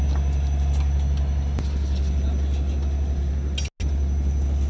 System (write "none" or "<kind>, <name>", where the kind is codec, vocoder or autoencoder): none